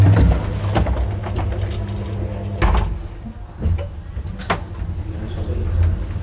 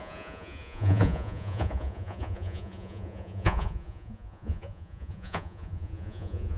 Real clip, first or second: first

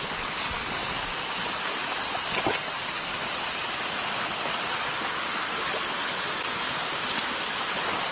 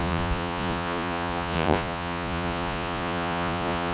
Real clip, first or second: first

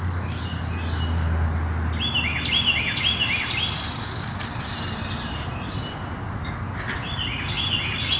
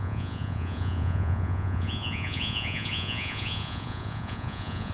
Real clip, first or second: first